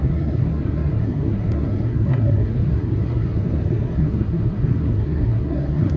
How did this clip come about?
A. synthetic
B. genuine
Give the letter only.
A